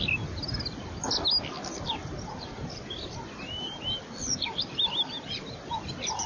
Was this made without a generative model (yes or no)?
yes